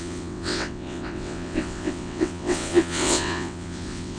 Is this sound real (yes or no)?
no